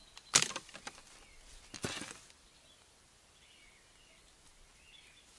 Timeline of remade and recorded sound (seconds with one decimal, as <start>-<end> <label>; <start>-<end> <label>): 0.0-5.4 recorded